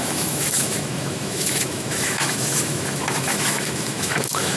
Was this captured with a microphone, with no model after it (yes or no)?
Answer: no